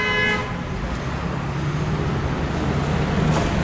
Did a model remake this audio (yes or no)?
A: no